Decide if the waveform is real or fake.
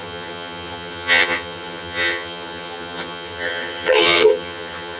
fake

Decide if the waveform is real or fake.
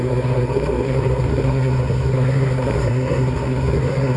fake